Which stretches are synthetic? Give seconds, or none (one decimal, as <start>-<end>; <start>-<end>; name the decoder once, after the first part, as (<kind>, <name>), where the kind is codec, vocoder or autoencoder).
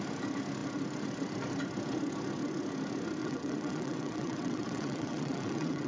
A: 3.2-5.9 (vocoder, WaveNeXt)